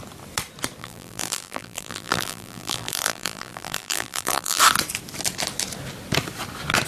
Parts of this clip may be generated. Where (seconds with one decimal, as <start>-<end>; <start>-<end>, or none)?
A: 0.8-4.6

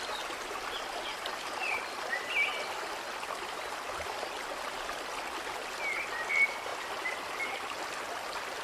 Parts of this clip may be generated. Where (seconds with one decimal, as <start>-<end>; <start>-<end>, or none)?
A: none

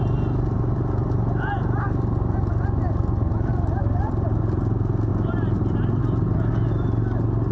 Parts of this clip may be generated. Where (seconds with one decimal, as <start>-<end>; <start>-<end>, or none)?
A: 3.5-4.4; 5.1-6.0

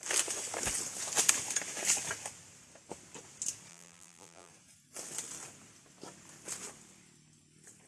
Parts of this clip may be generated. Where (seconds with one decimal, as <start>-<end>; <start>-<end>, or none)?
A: 3.7-4.5

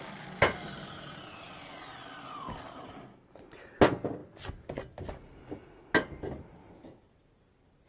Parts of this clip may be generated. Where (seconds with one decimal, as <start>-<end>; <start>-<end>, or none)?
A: none

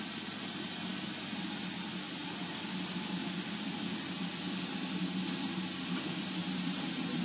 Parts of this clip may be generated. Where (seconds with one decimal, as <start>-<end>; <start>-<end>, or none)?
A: 6.4-7.2

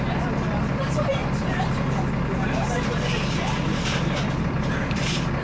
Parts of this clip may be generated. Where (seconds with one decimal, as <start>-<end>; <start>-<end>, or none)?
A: 0.0-1.2; 4.4-5.4